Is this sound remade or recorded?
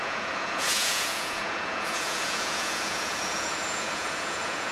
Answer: remade